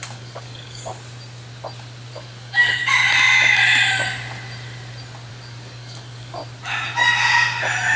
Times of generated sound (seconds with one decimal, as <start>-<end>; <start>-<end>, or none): 0.0-0.9; 2.1-2.8; 5.3-6.4